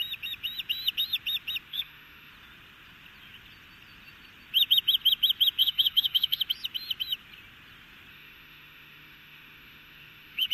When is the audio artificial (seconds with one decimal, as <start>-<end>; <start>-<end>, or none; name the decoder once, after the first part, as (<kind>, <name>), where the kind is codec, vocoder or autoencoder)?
1.7-2.3 (autoencoder, DAC-VAE); 5.6-6.4; 8.1-10.5